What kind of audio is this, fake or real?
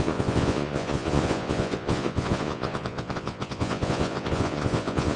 fake